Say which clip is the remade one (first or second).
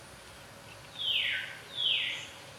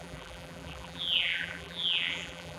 second